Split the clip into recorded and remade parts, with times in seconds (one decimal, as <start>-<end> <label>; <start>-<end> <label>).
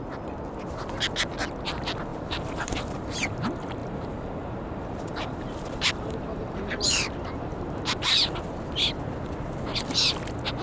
0.0-2.1 recorded; 2.1-3.4 remade; 3.4-3.8 recorded; 3.8-8.0 remade; 8.0-10.6 recorded